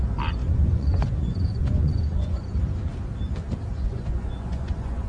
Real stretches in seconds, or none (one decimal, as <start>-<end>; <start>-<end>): 0.0-0.4; 2.4-3.7